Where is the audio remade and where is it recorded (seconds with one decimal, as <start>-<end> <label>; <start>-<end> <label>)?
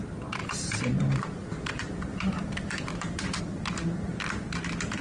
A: 0.0-0.4 recorded; 0.4-3.4 remade; 3.4-5.0 recorded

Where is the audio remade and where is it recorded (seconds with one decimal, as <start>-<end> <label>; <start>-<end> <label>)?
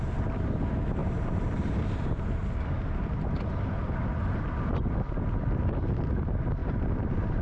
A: 0.0-1.0 recorded; 1.0-2.5 remade; 2.5-7.4 recorded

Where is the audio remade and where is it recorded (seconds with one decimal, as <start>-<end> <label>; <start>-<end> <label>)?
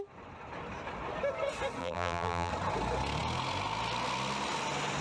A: 0.0-1.8 recorded; 1.8-2.5 remade; 2.5-5.0 recorded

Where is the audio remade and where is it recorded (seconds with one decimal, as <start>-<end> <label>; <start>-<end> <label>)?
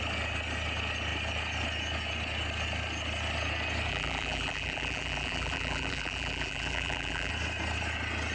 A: 0.0-3.9 recorded; 3.9-7.3 remade; 7.3-8.3 recorded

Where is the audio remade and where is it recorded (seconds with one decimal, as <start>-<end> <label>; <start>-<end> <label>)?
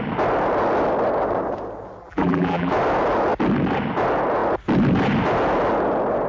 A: 0.0-2.0 recorded; 2.0-2.7 remade; 2.7-6.3 recorded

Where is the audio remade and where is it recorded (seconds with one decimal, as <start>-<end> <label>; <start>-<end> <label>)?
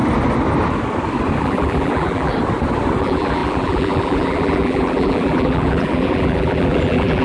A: 0.0-1.4 recorded; 1.4-2.3 remade; 2.3-3.0 recorded; 3.0-7.2 remade